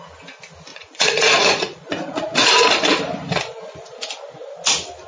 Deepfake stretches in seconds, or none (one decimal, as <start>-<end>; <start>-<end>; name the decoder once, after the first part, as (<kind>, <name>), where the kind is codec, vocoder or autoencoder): 0.7-2.7 (vocoder, Vocos)